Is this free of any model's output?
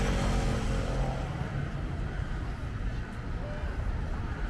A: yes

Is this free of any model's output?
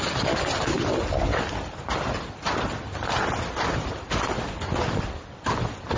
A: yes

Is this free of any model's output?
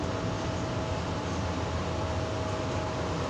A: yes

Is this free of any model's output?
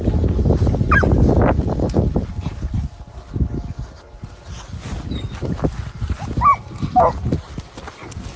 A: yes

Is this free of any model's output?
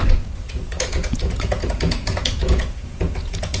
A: no